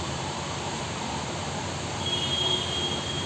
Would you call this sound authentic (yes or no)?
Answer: no